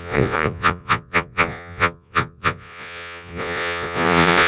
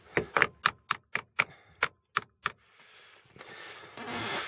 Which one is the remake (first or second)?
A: first